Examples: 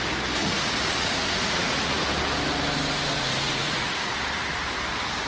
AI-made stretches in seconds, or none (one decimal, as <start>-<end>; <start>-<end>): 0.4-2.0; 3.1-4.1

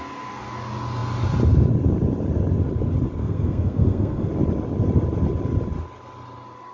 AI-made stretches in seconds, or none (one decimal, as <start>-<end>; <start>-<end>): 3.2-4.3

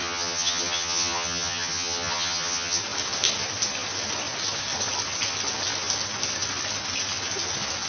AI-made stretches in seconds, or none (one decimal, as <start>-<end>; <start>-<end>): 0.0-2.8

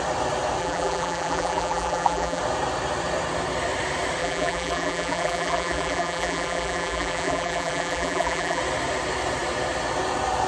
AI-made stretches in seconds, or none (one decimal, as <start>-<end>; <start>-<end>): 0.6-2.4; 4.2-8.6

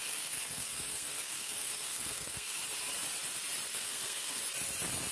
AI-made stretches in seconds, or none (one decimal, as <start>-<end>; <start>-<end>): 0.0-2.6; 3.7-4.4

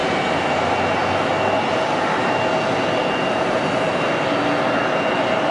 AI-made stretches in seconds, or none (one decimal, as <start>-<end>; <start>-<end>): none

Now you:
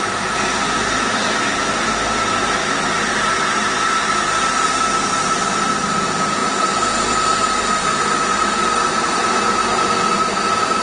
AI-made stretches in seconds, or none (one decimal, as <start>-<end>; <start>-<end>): none

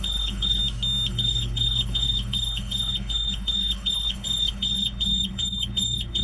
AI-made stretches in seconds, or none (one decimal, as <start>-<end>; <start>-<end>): 0.0-0.6; 1.1-6.2